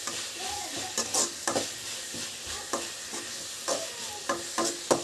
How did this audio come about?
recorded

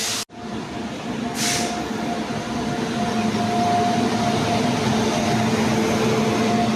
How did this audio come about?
recorded